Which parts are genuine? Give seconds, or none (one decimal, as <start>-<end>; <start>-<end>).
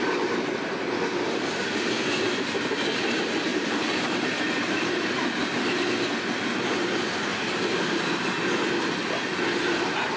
0.0-3.5; 4.7-7.3; 8.0-10.2